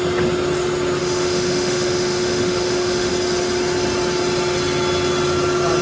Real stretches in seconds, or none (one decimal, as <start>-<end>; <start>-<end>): 0.0-1.0; 3.1-5.8